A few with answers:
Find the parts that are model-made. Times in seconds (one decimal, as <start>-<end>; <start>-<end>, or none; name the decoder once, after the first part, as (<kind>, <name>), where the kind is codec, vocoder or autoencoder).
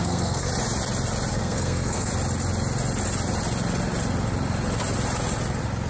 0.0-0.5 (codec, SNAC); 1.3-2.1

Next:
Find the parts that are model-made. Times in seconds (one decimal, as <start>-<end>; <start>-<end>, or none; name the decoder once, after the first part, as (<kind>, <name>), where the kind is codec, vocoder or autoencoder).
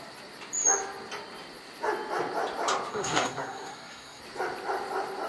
2.9-4.2 (codec, SNAC)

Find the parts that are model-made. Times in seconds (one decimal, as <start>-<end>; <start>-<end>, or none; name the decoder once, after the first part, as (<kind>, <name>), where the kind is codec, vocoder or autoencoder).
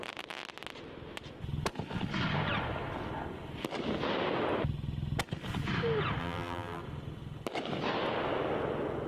6.2-6.8 (vocoder, BigVGAN v2)